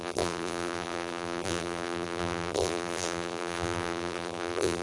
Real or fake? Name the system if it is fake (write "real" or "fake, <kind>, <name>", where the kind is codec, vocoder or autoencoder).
fake, vocoder, BigVGAN v2